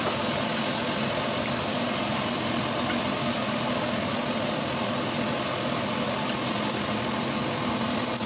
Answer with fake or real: real